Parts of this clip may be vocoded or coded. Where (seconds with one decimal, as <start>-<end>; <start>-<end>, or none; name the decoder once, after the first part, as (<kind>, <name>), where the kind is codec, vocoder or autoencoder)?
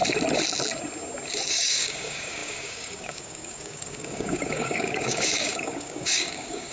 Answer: 1.5-6.7 (codec, DAC)